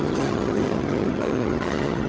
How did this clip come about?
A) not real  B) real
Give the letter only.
A